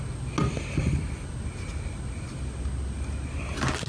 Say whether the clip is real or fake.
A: real